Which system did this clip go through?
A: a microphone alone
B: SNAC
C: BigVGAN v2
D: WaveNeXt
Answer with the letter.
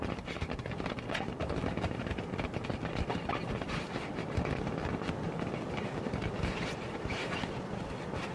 C